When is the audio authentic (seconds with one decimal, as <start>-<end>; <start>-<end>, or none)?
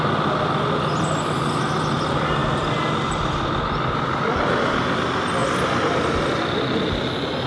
0.0-7.5